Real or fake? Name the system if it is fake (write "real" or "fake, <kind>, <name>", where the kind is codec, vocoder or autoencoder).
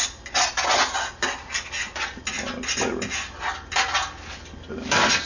real